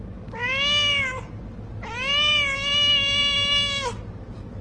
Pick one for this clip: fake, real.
real